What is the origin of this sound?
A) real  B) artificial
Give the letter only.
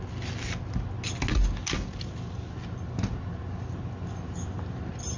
A